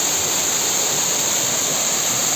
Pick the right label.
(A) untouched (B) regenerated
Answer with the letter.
B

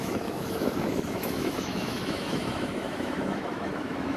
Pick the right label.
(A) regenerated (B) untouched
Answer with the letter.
A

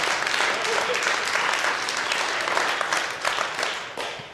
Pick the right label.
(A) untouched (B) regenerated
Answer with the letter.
A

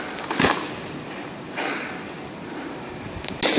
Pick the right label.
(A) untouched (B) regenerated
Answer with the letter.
A